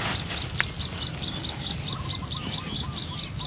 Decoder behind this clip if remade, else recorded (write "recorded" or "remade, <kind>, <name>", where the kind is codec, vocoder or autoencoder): recorded